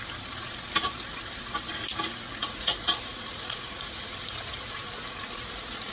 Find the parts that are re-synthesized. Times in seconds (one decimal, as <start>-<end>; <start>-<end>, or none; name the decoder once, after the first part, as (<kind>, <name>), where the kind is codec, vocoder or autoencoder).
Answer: 2.4-5.9 (vocoder, Vocos)